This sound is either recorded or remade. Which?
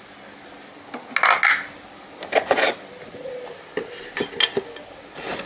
recorded